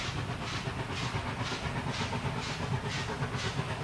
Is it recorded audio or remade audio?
recorded